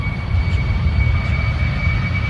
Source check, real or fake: fake